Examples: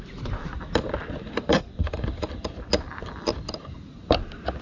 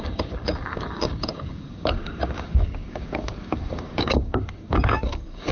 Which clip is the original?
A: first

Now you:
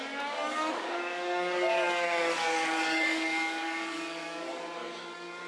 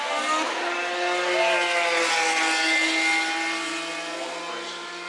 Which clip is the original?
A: second